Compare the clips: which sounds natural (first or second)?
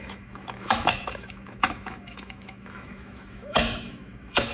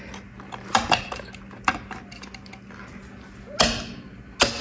second